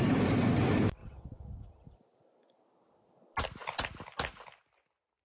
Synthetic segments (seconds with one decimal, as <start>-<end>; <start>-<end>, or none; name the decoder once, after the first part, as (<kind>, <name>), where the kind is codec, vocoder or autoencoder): 1.0-1.5 (vocoder, WaveNeXt)